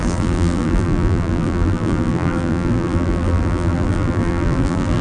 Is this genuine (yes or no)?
no